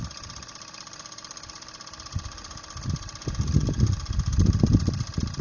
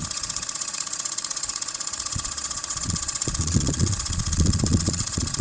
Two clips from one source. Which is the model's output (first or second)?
second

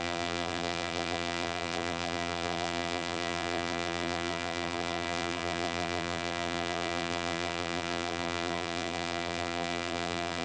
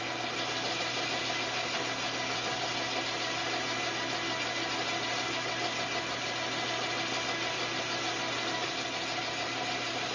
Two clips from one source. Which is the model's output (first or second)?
first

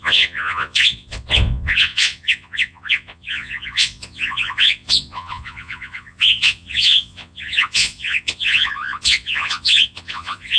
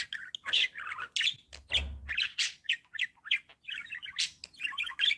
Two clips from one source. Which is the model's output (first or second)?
first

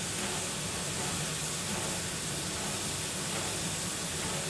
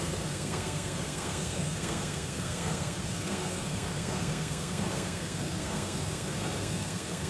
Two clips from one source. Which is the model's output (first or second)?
second